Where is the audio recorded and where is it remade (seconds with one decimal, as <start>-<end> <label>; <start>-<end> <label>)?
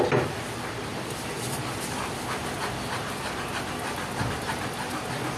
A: 0.0-0.9 recorded; 0.9-2.2 remade; 2.2-5.4 recorded